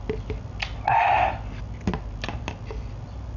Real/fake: real